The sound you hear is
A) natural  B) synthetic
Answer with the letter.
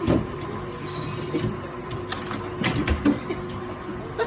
A